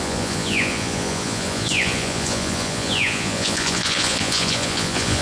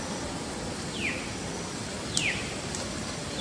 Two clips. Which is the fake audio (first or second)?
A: first